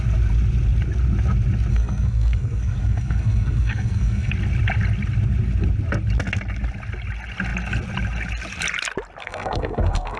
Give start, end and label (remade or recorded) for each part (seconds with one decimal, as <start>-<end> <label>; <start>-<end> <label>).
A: 0.0-1.7 recorded; 1.7-4.3 remade; 4.3-9.2 recorded; 9.2-10.2 remade